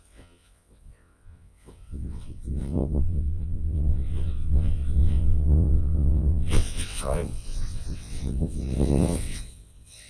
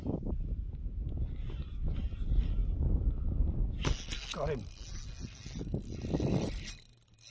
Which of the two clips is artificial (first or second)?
first